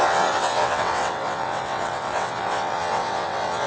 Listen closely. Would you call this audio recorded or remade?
remade